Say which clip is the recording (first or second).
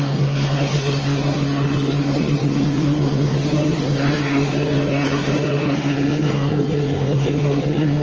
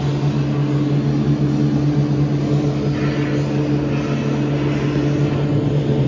second